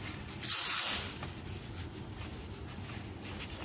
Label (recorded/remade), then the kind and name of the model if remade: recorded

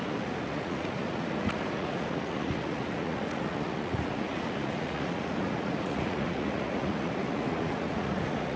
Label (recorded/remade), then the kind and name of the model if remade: remade, vocoder, Vocos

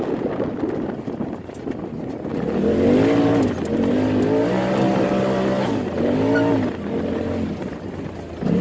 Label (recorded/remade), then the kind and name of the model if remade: recorded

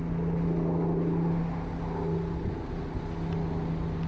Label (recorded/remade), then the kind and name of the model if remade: recorded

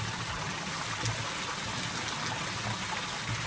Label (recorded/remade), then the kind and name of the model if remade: recorded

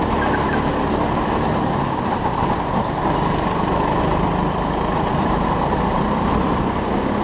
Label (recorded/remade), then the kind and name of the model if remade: recorded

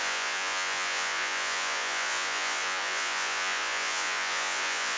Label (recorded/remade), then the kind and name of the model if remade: remade, vocoder, Vocos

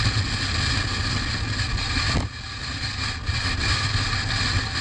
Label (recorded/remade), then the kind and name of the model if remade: recorded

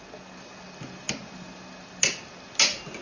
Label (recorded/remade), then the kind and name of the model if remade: recorded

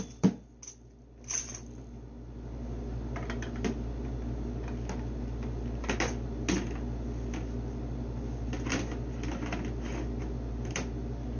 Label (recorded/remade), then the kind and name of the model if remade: recorded